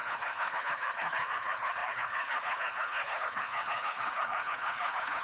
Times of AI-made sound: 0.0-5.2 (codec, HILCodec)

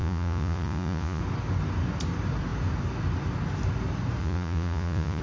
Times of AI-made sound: 0.0-1.2 (vocoder, Vocos); 4.2-5.2

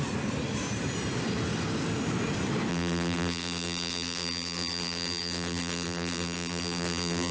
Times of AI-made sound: 2.7-7.3 (vocoder, BigVGAN v2)

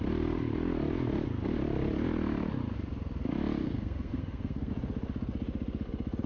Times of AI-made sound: 3.6-4.7 (codec, SNAC)